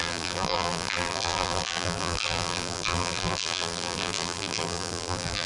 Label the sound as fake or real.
fake